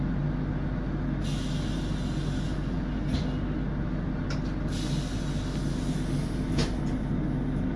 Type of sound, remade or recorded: recorded